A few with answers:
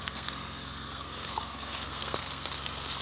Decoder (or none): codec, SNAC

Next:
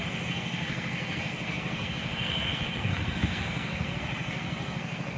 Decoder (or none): codec, SNAC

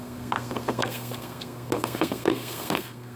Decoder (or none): codec, SNAC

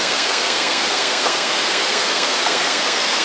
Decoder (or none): codec, SNAC